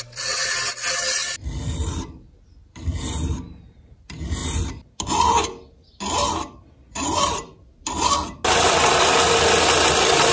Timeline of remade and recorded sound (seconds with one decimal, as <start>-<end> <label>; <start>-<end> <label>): 0.0-10.3 recorded